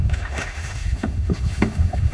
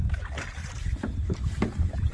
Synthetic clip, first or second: first